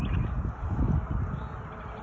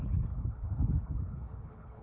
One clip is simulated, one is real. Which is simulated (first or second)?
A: second